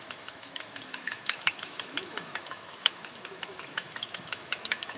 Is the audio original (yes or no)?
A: no